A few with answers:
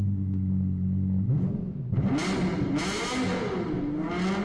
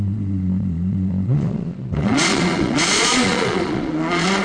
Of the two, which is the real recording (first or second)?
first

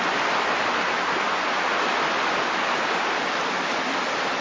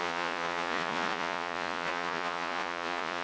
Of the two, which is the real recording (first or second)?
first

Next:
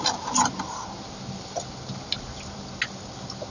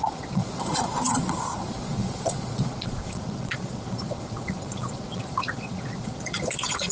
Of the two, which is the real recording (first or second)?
first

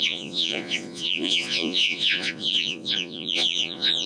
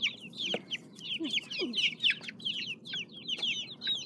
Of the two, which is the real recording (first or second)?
second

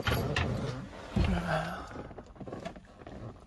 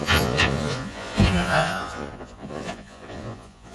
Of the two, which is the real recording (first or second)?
first